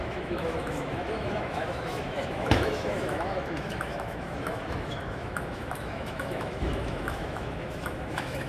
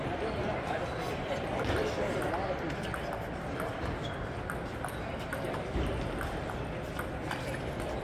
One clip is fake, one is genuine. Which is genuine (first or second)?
second